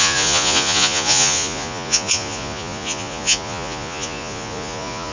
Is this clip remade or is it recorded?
remade